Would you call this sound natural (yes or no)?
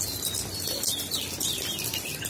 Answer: yes